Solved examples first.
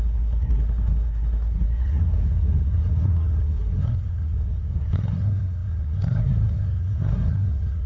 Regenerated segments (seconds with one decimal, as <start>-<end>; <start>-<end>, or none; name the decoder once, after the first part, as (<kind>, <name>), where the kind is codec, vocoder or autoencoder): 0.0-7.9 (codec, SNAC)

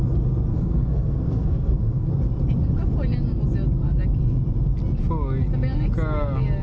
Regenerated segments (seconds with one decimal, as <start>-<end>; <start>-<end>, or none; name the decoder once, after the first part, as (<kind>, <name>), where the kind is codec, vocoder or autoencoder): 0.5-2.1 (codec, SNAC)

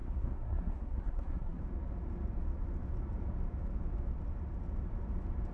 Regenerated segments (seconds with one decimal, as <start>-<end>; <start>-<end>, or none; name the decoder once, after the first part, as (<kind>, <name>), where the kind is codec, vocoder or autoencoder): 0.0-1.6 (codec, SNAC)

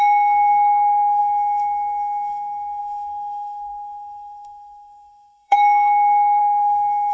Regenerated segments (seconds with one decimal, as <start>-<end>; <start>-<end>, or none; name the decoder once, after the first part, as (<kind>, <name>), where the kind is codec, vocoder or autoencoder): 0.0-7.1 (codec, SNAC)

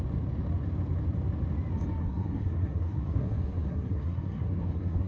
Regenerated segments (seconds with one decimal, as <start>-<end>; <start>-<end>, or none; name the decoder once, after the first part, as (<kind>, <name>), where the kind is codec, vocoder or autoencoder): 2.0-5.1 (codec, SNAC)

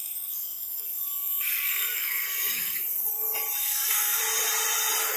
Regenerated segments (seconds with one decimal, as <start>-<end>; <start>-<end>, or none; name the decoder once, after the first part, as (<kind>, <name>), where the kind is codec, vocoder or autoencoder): 0.0-3.1 (codec, SNAC); 3.6-4.2

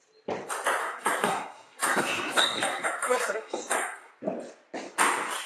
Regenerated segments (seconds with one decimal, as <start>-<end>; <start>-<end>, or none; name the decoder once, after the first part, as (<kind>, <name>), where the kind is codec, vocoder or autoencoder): 0.8-4.1 (codec, SNAC)